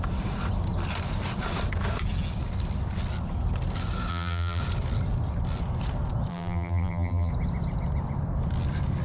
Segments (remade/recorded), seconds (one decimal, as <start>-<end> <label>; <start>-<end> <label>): 0.0-4.1 recorded; 4.1-4.6 remade; 4.6-6.3 recorded; 6.3-7.3 remade; 7.3-9.0 recorded